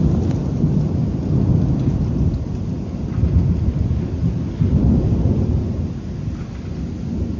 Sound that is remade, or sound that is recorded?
recorded